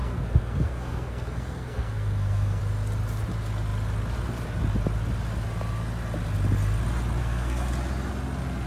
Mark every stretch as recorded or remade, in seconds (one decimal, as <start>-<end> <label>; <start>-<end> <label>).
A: 0.0-2.6 remade; 2.6-7.2 recorded; 7.2-7.7 remade; 7.7-8.7 recorded